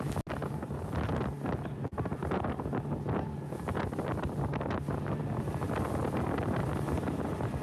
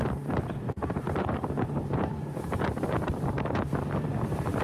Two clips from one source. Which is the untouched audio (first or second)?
first